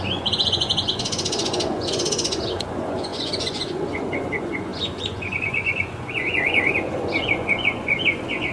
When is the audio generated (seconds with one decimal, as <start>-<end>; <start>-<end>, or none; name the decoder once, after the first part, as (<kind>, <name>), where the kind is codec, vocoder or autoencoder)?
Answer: 0.0-8.5 (vocoder, Vocos)